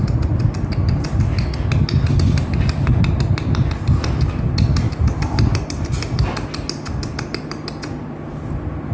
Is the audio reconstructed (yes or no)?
no